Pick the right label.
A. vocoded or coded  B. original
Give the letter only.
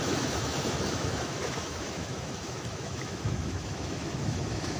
A